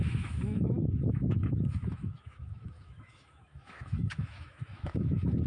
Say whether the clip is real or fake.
fake